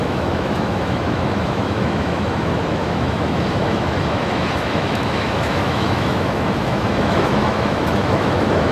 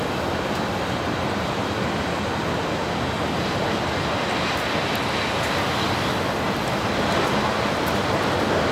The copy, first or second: first